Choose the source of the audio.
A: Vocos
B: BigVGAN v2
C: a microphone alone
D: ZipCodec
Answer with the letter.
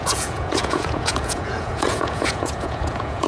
A